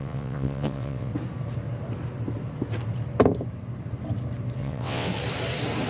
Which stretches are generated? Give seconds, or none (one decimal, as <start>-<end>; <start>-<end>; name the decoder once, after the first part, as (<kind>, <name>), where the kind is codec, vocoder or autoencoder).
0.0-1.1 (vocoder, WaveNeXt); 4.6-5.1